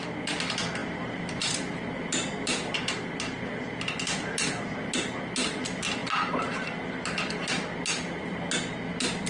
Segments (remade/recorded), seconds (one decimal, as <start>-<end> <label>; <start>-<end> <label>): 0.0-9.3 recorded